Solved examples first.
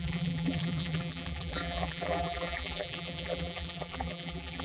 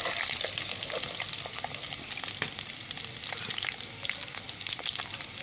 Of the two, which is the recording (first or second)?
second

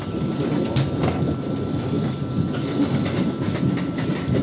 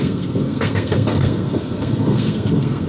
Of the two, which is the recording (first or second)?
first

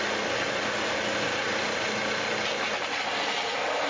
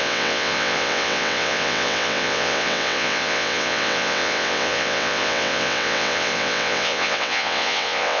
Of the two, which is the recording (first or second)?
first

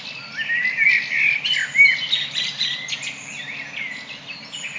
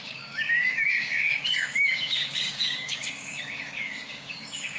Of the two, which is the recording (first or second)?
first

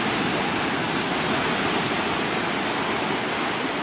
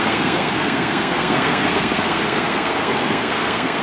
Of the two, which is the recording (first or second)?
first